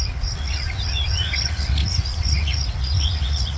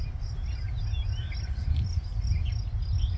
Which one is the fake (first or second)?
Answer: first